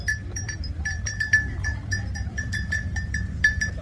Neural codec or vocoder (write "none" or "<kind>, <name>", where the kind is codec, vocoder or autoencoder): vocoder, BigVGAN v2